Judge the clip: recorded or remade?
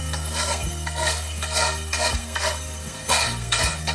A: remade